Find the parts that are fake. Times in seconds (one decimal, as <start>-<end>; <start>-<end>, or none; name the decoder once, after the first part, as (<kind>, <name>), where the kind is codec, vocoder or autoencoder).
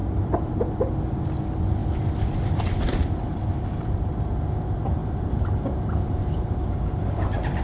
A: 0.0-0.5 (vocoder, BigVGAN v2); 3.0-4.1; 5.0-7.0